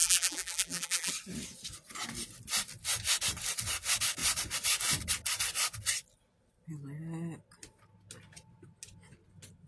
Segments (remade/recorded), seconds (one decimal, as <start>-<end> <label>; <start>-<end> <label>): 0.0-1.1 remade; 1.1-9.7 recorded

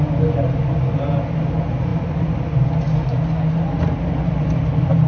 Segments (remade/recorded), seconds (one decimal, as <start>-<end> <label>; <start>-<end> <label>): 0.0-5.1 recorded

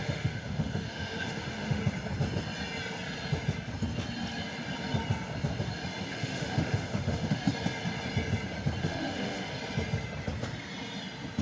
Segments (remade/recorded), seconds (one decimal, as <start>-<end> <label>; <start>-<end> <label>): 0.0-1.8 remade; 1.8-6.1 recorded; 6.1-7.4 remade; 7.4-8.8 recorded; 8.8-9.5 remade; 9.5-11.4 recorded

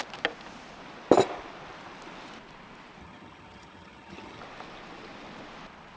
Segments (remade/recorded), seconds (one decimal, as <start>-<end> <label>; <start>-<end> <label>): 0.0-3.0 recorded; 3.0-4.4 remade; 4.4-6.0 recorded

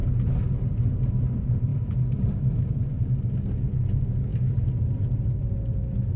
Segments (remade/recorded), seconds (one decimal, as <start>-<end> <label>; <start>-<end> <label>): 0.0-1.7 recorded; 1.7-2.9 remade; 2.9-4.3 recorded; 4.3-4.9 remade; 4.9-6.2 recorded